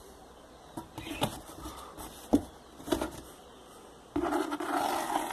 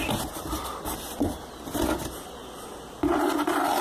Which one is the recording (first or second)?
second